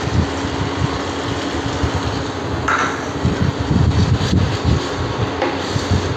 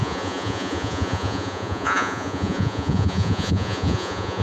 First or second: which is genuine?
first